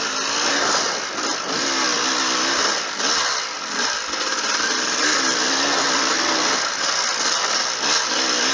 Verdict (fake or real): real